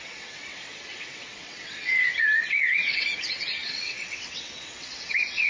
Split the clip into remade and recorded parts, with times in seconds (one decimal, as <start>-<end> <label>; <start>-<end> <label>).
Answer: 0.0-5.5 remade